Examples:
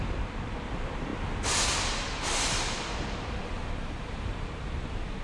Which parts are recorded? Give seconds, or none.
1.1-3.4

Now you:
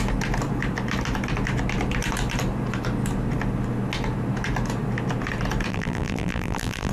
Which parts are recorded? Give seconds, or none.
0.0-5.7

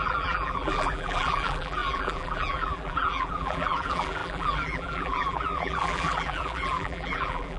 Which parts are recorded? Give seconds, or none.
none

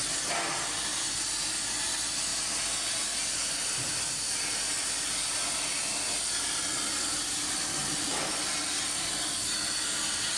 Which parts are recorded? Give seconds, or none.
0.0-10.4